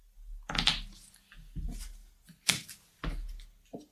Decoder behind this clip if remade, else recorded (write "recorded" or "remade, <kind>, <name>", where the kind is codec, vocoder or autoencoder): recorded